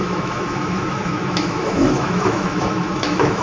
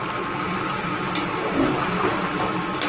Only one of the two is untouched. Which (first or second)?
second